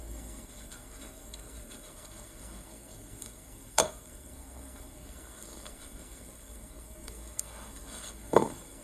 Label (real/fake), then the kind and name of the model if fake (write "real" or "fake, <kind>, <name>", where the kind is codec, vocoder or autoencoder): fake, codec, SNAC